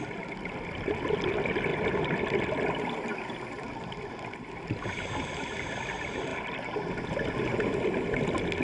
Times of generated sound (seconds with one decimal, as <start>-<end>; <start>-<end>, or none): 1.7-2.2; 3.1-4.8